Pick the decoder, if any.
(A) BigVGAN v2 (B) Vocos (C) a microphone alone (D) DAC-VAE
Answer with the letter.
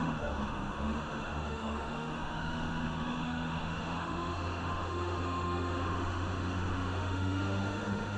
D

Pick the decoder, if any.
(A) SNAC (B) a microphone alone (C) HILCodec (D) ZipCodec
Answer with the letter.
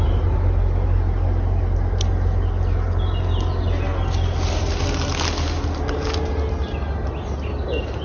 B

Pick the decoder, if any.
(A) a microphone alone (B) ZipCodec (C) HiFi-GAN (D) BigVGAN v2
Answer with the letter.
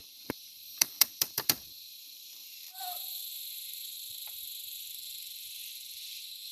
D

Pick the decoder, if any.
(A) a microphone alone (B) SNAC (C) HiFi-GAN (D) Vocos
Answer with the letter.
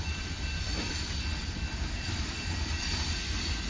A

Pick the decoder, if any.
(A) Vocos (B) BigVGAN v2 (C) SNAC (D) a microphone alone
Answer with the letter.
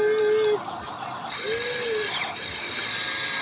D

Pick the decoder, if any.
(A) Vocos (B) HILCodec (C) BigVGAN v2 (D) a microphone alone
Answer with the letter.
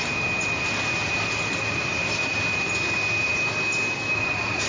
D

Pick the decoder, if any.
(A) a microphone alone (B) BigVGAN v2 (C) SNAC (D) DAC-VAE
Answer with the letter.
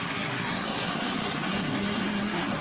C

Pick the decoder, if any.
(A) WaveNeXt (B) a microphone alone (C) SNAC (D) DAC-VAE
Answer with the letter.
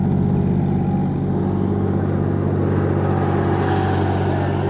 B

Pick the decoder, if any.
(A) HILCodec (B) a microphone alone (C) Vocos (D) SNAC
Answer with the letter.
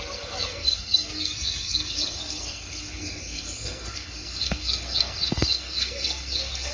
D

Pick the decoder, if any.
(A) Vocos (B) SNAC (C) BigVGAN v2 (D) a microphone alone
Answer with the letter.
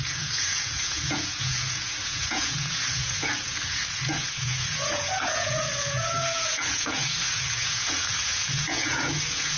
A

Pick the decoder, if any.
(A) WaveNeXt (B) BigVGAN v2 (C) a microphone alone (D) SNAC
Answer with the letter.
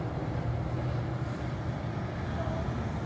C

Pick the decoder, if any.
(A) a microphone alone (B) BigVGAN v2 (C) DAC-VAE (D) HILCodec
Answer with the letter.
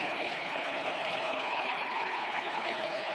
D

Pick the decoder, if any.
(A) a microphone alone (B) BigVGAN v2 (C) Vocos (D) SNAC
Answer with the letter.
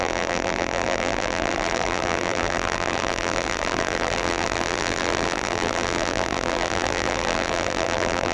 B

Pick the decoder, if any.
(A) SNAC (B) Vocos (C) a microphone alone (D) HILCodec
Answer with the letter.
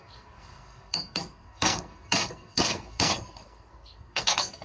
A